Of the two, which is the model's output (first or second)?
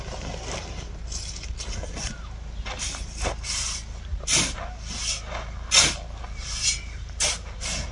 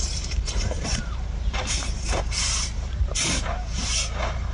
second